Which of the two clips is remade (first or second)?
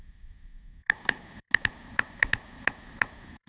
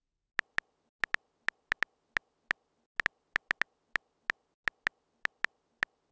first